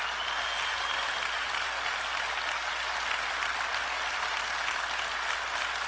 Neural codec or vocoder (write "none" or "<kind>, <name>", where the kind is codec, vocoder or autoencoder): none